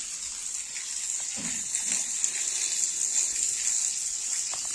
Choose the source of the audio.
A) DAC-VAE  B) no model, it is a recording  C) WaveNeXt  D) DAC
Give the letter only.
B